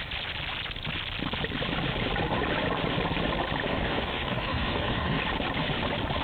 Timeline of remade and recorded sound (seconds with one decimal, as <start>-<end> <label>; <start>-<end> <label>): 0.0-3.7 recorded; 3.7-5.2 remade; 5.2-6.2 recorded